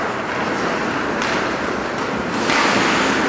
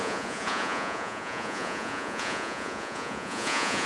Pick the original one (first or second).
first